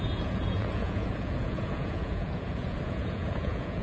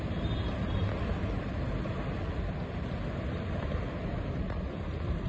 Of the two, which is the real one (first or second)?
second